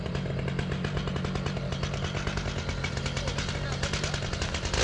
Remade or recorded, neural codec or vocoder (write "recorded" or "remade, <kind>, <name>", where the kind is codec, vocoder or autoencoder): recorded